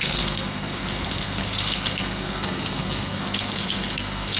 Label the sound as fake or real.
fake